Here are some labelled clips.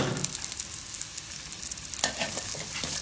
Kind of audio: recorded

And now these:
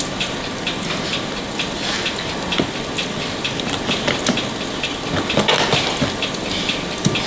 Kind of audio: recorded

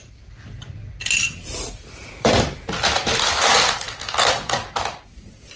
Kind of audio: recorded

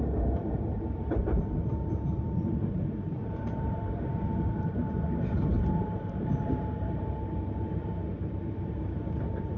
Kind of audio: remade